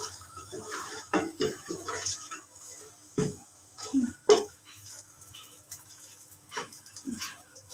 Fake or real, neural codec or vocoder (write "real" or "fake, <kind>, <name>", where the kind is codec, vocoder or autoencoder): fake, autoencoder, DAC-VAE